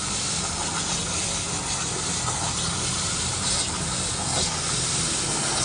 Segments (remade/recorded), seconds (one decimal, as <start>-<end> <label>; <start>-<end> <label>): 0.0-5.6 recorded